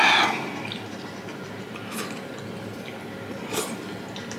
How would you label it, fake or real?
real